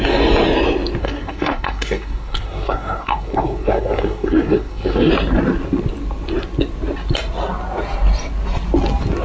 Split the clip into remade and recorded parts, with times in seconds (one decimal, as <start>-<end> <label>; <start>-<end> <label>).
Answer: 0.0-1.0 recorded; 1.0-5.1 remade; 5.1-9.2 recorded